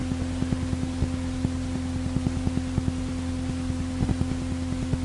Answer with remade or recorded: recorded